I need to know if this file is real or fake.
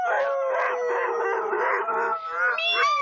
real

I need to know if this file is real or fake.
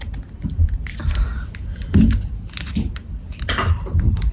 real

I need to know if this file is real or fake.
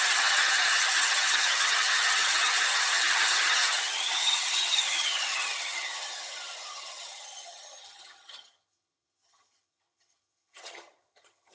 fake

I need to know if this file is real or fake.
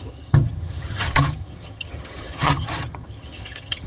fake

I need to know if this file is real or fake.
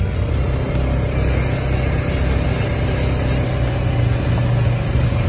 real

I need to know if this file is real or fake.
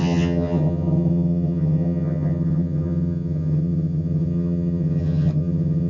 fake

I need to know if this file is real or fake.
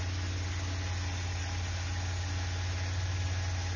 real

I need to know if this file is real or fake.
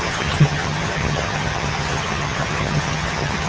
fake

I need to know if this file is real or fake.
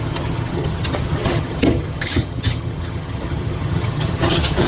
fake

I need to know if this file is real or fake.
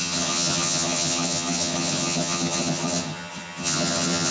fake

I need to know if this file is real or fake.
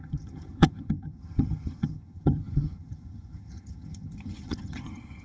fake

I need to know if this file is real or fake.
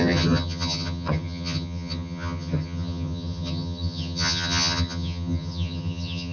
fake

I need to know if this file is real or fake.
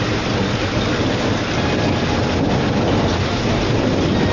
real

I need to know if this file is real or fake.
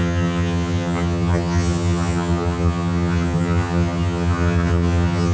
fake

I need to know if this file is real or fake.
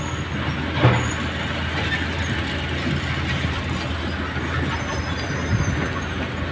real